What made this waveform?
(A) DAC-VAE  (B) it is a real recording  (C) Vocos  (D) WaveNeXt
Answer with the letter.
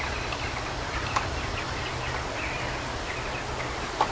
B